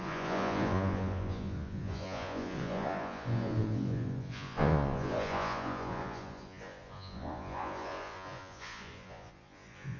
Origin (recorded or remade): remade